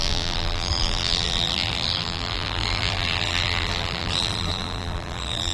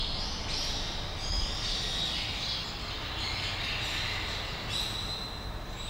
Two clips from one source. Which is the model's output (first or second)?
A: first